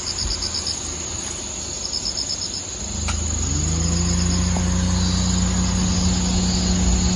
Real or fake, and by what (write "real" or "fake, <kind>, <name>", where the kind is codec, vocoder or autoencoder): real